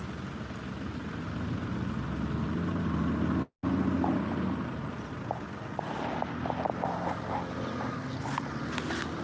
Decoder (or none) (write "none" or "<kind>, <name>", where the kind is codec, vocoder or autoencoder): none